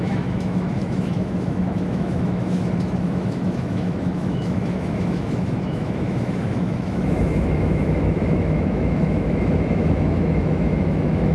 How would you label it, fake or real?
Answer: fake